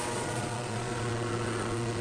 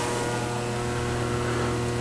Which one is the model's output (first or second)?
first